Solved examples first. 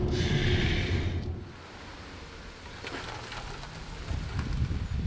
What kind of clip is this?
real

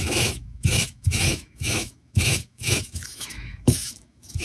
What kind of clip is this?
fake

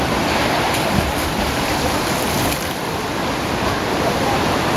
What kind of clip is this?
fake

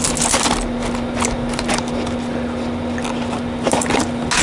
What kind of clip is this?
real